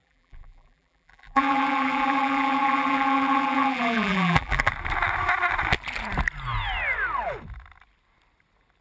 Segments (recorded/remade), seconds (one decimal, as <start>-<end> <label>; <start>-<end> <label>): 0.0-4.7 remade; 4.7-8.8 recorded